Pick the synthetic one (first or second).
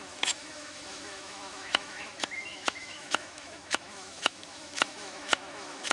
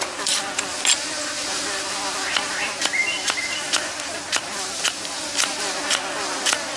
first